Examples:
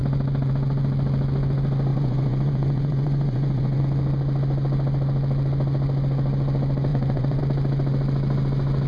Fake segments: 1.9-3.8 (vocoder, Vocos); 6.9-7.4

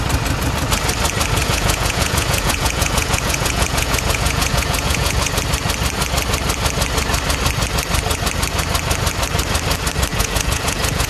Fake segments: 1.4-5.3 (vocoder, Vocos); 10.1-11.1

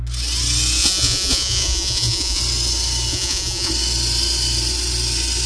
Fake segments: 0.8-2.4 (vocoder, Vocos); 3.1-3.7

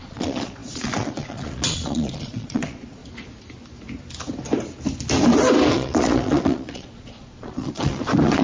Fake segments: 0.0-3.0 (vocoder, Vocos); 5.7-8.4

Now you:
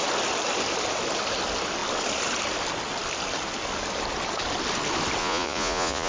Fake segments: 5.2-6.1 (vocoder, Vocos)

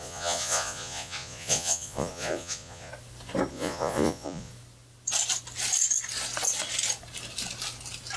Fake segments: 0.0-2.9 (vocoder, Vocos); 3.5-4.5

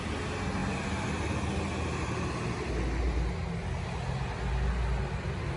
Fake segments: none

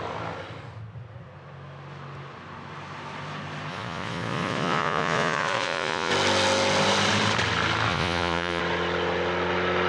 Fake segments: 3.7-6.1 (vocoder, Vocos); 7.9-8.6